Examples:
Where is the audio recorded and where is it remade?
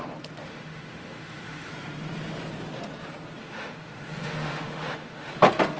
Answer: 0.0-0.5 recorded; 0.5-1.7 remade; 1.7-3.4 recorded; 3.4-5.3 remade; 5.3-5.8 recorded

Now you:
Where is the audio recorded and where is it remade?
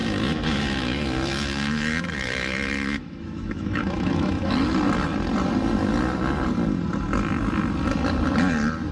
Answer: 0.0-4.5 remade; 4.5-8.9 recorded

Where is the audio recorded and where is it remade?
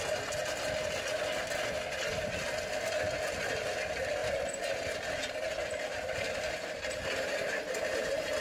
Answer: 0.0-8.4 recorded